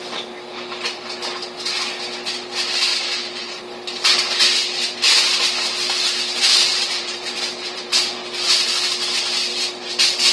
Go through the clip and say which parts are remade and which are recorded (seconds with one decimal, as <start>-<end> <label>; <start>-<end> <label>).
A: 0.0-2.9 recorded; 2.9-3.6 remade; 3.6-6.7 recorded; 6.7-7.8 remade; 7.8-10.3 recorded